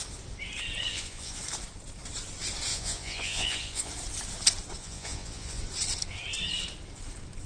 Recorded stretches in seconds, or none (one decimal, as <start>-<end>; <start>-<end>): 0.0-0.9; 1.4-2.7; 3.9-4.8; 5.6-7.5